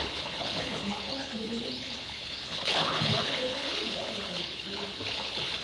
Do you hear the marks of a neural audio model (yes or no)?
yes